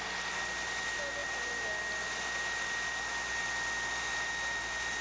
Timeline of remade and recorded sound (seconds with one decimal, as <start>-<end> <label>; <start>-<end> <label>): 0.0-5.0 recorded